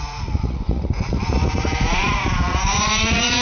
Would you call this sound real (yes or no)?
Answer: no